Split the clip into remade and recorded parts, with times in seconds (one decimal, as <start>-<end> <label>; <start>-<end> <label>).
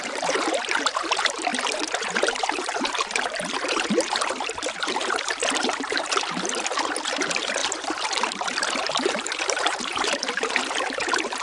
0.0-11.4 remade